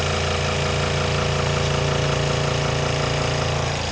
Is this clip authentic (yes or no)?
yes